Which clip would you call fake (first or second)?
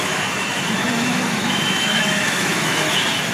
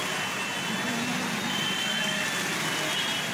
first